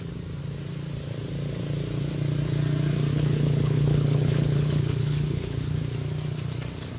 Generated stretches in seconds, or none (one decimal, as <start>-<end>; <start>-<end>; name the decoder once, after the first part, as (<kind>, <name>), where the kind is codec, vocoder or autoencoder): 3.1-5.8 (codec, HILCodec)